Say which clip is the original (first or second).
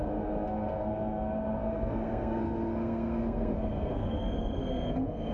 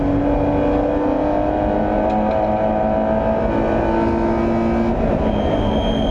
second